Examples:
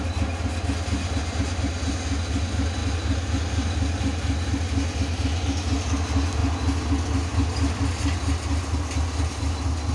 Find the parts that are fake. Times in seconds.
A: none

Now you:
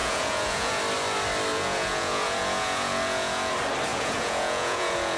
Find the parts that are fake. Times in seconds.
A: 0.0-0.8 (vocoder, Vocos); 1.5-3.5; 3.9-5.2

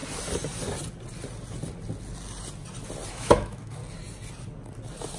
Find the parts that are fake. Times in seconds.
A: 3.1-3.8 (autoencoder, DAC-VAE)

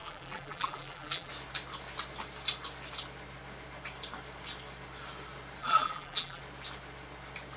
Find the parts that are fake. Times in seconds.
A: 0.0-1.3 (vocoder, BigVGAN v2); 5.6-6.4

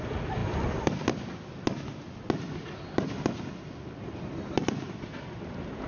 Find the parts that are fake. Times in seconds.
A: none

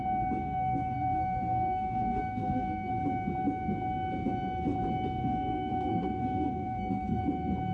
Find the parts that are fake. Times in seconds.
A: 0.4-2.9 (codec, SNAC); 5.2-7.2